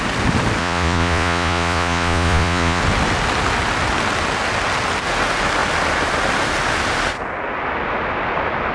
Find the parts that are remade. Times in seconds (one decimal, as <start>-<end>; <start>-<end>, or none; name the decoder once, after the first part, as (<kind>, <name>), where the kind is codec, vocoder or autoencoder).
0.6-2.8 (vocoder, Vocos)